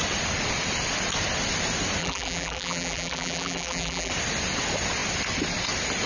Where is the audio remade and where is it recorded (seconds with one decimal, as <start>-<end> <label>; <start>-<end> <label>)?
0.0-2.0 recorded; 2.0-4.1 remade; 4.1-6.1 recorded